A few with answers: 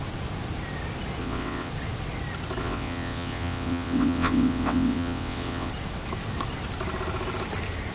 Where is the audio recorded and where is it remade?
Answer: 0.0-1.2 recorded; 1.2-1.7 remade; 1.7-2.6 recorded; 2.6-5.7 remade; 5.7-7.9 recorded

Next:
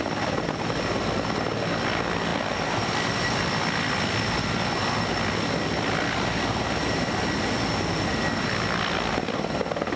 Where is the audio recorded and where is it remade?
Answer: 0.0-10.0 recorded

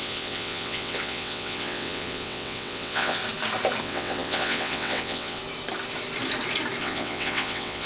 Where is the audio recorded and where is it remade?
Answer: 0.0-3.2 remade; 3.2-3.8 recorded; 3.8-5.4 remade; 5.4-6.8 recorded; 6.8-7.9 remade

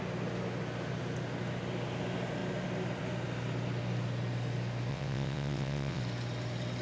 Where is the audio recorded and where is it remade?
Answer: 0.0-4.9 recorded; 4.9-6.0 remade; 6.0-6.8 recorded

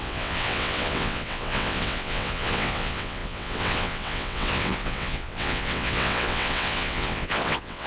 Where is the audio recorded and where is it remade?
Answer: 0.0-7.9 remade

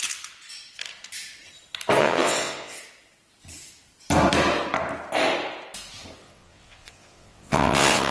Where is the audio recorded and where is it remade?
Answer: 0.0-2.0 recorded; 2.0-2.8 remade; 2.8-6.2 recorded; 6.2-8.1 remade